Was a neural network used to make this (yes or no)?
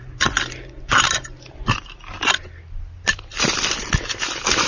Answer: no